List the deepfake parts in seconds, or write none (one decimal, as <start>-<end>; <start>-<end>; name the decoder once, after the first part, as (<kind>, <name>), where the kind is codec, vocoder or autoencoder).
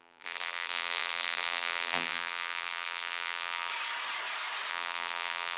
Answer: 0.0-3.7 (vocoder, BigVGAN v2); 4.7-5.6